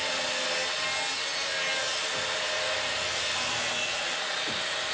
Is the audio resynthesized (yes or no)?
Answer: no